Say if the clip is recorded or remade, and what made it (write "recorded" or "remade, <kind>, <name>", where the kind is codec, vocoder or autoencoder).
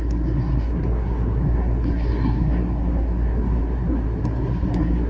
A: remade, codec, SNAC